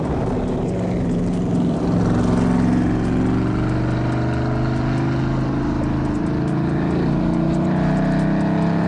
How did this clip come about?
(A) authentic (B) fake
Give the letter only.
A